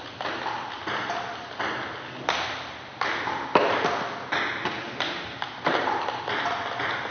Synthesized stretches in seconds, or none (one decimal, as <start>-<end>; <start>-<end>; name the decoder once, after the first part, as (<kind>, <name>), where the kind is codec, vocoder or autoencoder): none